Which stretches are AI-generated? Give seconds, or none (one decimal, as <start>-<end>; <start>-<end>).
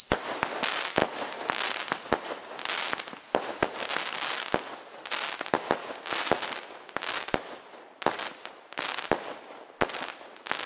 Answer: none